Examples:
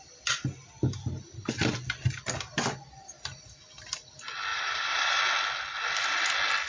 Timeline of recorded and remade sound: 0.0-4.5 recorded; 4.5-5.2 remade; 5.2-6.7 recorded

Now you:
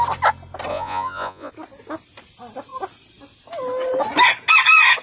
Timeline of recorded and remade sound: 0.0-0.7 recorded; 0.7-1.5 remade; 1.5-5.0 recorded

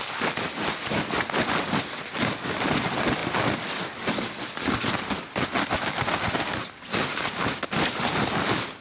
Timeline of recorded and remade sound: 0.0-8.8 recorded

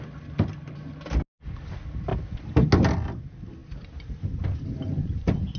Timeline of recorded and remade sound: 0.0-5.6 recorded